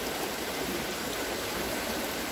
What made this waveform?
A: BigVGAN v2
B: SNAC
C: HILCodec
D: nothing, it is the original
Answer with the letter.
A